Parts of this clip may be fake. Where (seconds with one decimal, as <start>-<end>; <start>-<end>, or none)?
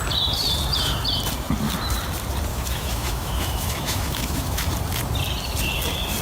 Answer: 2.5-4.7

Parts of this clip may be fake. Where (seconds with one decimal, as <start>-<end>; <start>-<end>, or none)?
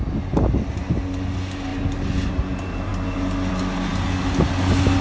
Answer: none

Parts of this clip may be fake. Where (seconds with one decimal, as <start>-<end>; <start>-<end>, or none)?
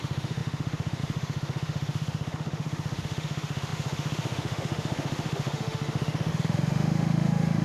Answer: 0.0-7.6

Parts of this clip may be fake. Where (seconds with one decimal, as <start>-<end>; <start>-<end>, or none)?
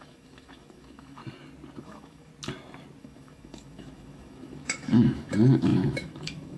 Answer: 0.0-1.2; 1.8-2.3; 3.0-6.6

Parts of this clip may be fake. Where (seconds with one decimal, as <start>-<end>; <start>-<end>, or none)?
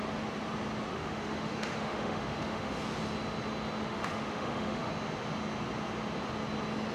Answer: 0.9-2.8; 3.8-4.9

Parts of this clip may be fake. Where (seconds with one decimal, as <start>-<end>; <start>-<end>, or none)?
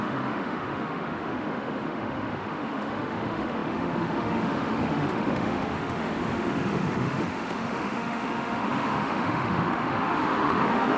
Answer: 0.0-11.0